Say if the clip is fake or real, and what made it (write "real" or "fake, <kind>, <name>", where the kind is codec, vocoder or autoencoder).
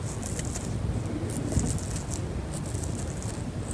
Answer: real